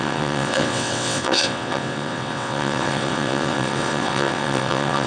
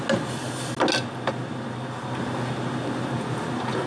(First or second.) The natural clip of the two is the second